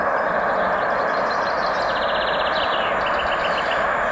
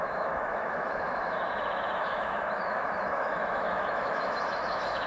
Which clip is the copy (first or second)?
second